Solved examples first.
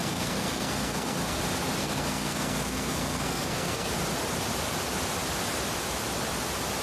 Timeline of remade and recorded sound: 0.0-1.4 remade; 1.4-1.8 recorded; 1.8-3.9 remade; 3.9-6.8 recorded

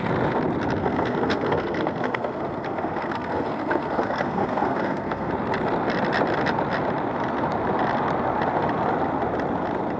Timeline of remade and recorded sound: 0.0-0.8 recorded; 0.8-5.3 remade; 5.3-10.0 recorded